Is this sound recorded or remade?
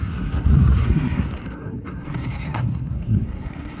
remade